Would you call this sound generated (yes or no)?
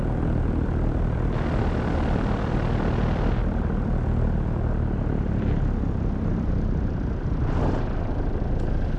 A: no